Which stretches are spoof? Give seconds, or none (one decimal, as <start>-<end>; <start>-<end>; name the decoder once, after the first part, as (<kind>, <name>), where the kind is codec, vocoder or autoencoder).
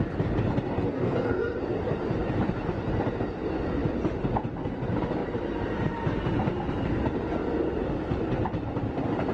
0.9-1.6 (codec, SNAC)